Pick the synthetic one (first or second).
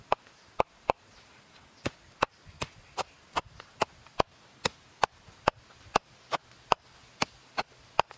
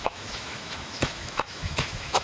second